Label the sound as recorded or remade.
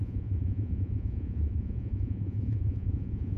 remade